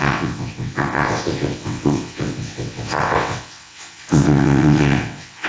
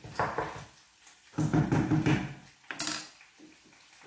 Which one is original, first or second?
second